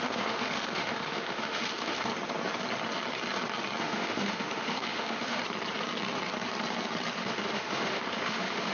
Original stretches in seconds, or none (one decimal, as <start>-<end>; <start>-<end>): 2.1-3.8; 5.4-7.2